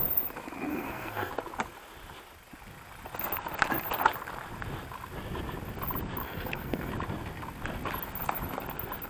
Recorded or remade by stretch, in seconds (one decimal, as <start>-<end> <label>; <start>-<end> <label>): 0.0-0.7 recorded; 0.7-1.3 remade; 1.3-6.2 recorded; 6.2-6.9 remade; 6.9-9.1 recorded